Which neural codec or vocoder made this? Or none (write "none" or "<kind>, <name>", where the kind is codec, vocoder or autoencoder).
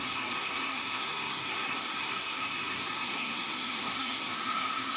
codec, SNAC